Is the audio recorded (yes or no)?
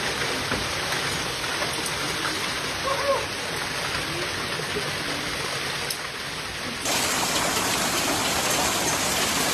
yes